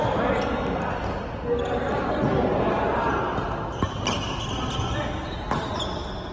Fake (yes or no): no